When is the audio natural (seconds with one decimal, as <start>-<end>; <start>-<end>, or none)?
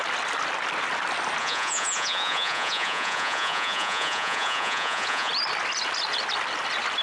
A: 0.0-1.4; 5.3-7.0